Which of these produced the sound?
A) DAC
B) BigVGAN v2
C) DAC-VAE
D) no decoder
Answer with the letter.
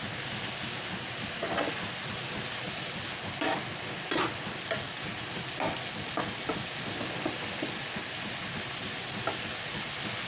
D